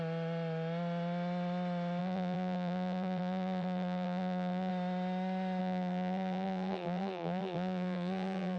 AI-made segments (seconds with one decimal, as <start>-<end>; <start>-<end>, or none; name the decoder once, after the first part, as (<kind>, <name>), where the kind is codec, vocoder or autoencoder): 2.0-4.7 (vocoder, BigVGAN v2); 5.6-8.6